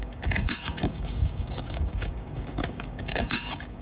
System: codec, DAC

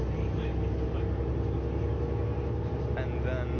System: none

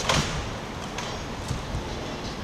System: none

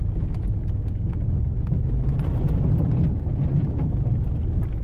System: none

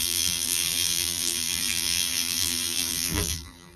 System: vocoder, BigVGAN v2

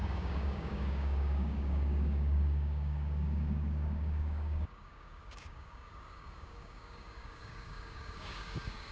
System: codec, DAC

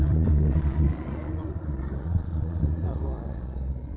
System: vocoder, Vocos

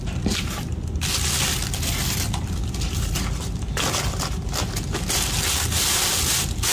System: none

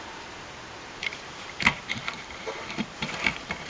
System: vocoder, BigVGAN v2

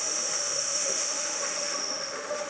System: autoencoder, DAC-VAE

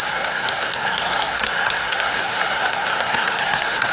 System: codec, SNAC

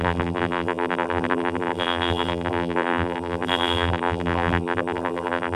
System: vocoder, BigVGAN v2